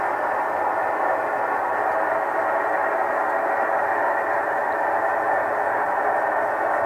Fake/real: real